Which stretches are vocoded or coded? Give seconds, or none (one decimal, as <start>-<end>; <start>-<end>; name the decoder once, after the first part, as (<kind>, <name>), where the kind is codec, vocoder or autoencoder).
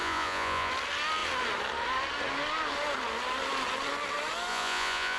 0.0-0.7 (vocoder, Vocos); 4.5-5.2